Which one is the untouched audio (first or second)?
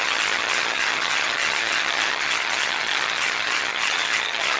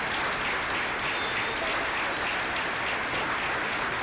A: second